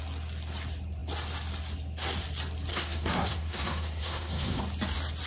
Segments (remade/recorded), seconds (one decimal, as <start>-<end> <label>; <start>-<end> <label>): 0.0-2.7 recorded; 2.7-4.6 remade; 4.6-5.3 recorded